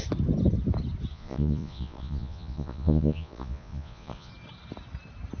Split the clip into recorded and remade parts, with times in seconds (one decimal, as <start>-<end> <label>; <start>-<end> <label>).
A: 0.0-1.1 recorded; 1.1-4.3 remade; 4.3-5.4 recorded